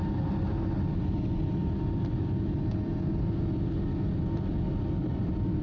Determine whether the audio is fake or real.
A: real